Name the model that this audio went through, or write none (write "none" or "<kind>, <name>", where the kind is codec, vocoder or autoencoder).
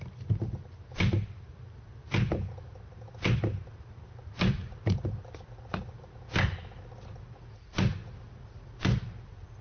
none